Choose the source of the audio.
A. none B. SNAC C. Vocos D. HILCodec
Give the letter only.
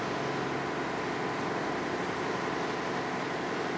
A